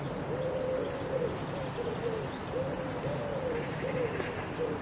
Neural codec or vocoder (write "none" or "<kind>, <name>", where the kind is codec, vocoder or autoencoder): none